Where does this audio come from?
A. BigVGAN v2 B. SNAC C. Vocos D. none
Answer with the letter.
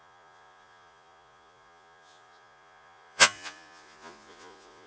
C